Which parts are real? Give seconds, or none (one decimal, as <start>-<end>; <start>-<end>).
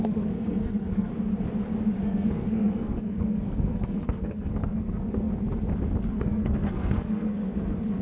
1.1-2.0; 5.3-6.0